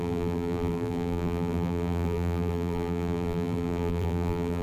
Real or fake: fake